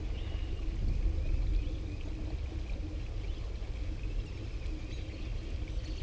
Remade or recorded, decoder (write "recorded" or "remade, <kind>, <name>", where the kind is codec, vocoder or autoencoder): recorded